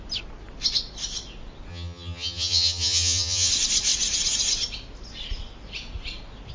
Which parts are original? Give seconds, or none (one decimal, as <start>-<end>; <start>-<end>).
0.0-1.7; 3.5-6.5